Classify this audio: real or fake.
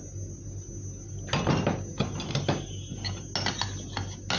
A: real